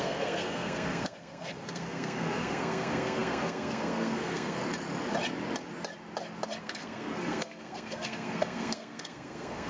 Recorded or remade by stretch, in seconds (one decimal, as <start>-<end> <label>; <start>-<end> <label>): 0.0-4.6 remade; 4.6-6.6 recorded; 6.6-9.7 remade